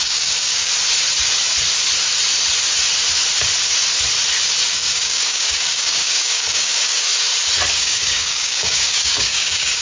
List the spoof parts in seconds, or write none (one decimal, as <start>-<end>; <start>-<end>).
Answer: 0.0-0.7; 4.7-7.1; 7.7-9.8